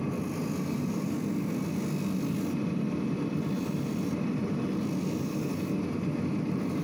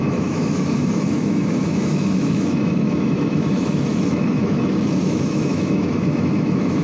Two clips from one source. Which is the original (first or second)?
first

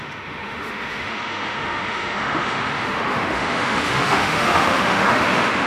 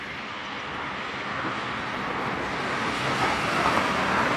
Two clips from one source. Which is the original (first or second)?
second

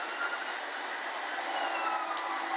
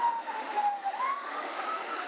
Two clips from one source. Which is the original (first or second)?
first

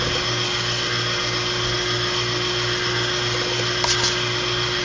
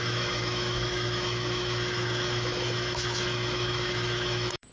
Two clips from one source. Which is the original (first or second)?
first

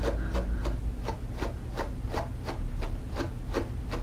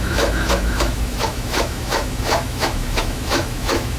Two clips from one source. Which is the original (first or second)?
first